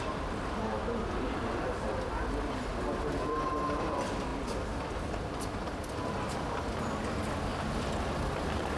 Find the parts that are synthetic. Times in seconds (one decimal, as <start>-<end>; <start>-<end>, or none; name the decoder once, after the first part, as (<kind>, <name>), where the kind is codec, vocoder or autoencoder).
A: 0.0-7.5 (vocoder, BigVGAN v2); 8.0-8.8